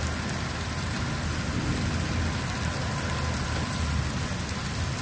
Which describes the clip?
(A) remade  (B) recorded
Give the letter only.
B